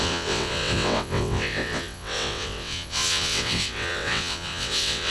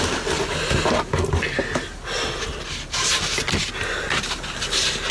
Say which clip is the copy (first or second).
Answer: first